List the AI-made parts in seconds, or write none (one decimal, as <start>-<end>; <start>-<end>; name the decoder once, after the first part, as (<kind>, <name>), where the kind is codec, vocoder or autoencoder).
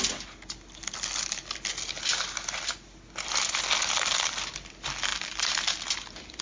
none